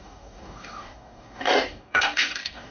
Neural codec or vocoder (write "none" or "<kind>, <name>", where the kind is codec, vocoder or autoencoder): codec, DAC